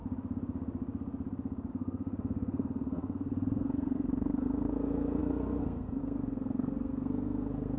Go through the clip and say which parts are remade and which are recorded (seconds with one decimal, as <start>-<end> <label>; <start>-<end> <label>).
0.0-1.7 recorded; 1.7-7.8 remade